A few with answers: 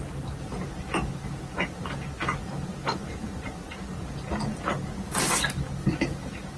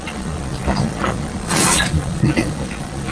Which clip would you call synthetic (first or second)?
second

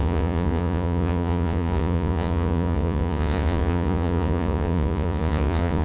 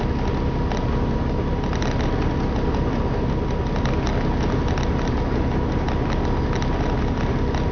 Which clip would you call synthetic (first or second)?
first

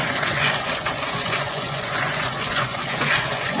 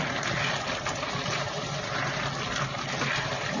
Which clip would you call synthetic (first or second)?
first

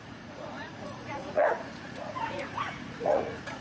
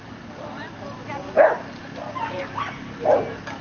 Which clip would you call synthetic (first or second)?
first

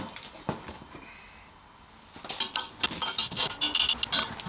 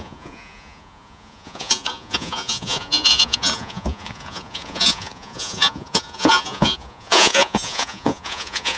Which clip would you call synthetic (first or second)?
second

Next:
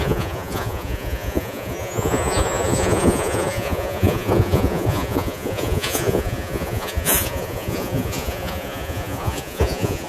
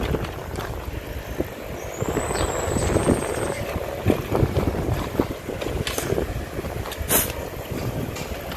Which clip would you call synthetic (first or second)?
first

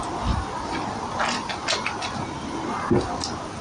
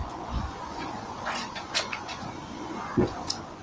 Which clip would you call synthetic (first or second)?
second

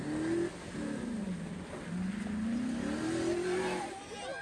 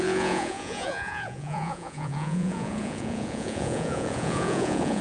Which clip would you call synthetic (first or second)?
second